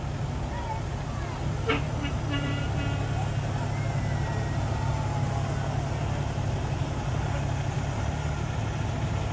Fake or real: real